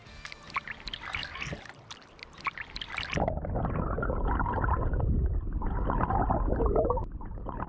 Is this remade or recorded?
recorded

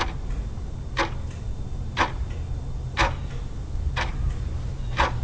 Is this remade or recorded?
recorded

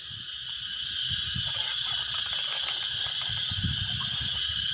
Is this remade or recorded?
recorded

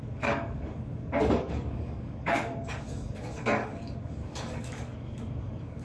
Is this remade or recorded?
remade